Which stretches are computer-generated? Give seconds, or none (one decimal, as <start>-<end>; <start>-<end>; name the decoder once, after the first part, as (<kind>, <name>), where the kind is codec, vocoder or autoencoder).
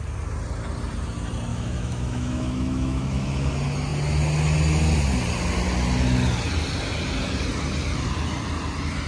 1.5-3.5 (autoencoder, DAC-VAE)